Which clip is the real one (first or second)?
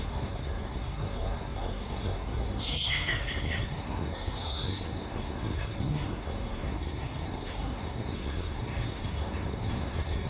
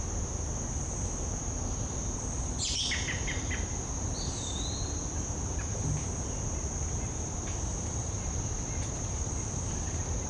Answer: second